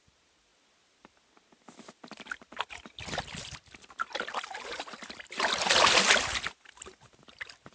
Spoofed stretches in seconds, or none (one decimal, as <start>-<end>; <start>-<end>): none